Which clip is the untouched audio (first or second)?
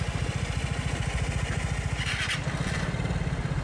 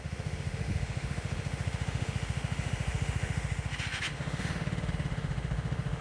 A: first